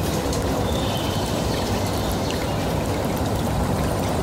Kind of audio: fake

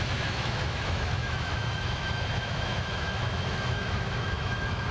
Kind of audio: fake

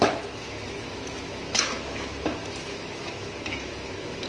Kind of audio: fake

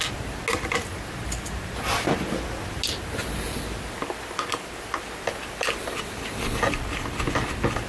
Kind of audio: real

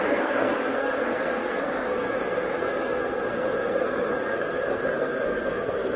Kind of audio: fake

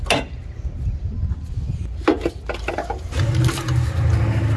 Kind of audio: real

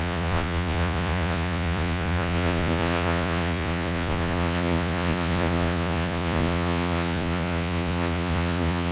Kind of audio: fake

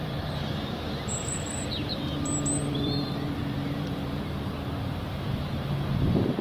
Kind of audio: fake